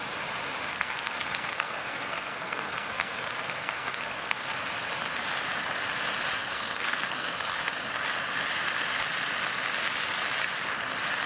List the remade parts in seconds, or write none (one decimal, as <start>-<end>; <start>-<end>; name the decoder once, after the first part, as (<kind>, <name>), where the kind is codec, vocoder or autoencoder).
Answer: 0.7-4.5 (codec, SNAC); 6.4-7.6